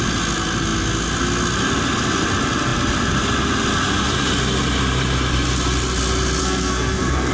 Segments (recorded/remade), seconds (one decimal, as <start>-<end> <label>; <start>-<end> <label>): 0.0-6.4 recorded; 6.4-7.3 remade